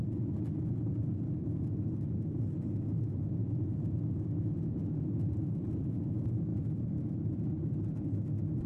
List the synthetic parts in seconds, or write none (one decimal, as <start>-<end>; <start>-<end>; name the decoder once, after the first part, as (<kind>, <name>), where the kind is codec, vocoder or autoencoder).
3.4-4.0 (vocoder, Vocos)